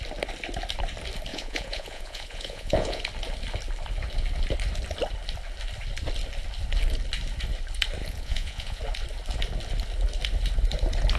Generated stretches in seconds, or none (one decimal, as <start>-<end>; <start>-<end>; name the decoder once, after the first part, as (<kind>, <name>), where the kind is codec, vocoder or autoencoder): 1.3-3.0 (vocoder, Vocos); 8.0-8.8